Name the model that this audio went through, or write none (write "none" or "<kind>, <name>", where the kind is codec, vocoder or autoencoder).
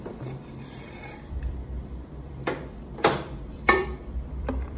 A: vocoder, BigVGAN v2